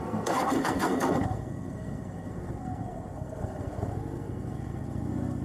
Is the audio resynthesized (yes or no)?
yes